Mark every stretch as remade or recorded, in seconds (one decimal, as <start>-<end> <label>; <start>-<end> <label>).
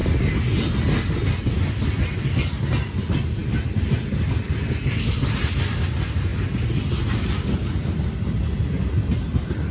0.0-9.7 recorded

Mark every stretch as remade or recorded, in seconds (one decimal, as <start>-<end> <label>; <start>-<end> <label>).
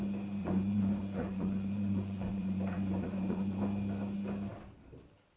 0.0-0.4 recorded; 0.4-3.6 remade; 3.6-5.4 recorded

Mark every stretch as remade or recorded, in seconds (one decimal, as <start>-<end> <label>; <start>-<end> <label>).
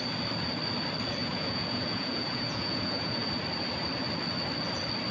0.0-1.2 recorded; 1.2-3.3 remade; 3.3-5.1 recorded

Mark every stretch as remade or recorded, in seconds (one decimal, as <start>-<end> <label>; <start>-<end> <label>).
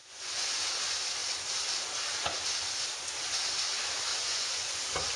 0.0-0.7 remade; 0.7-4.1 recorded; 4.1-4.8 remade; 4.8-5.2 recorded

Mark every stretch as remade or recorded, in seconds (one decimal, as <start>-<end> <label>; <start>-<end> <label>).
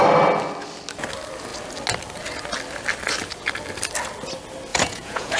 0.0-4.7 recorded; 4.7-5.4 remade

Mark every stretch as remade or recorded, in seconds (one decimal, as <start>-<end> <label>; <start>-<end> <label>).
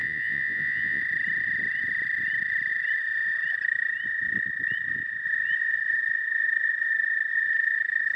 0.0-1.0 remade; 1.0-8.2 recorded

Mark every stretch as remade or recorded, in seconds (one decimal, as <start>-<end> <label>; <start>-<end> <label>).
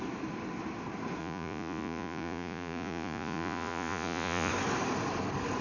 0.0-1.2 recorded; 1.2-4.5 remade; 4.5-5.6 recorded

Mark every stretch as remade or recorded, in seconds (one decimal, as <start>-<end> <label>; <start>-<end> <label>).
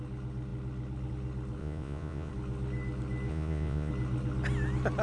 0.0-1.6 recorded; 1.6-2.3 remade; 2.3-3.3 recorded; 3.3-3.9 remade; 3.9-5.0 recorded